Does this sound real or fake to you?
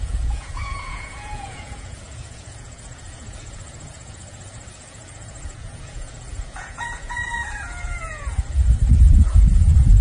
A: fake